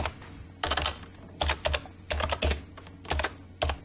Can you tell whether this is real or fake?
real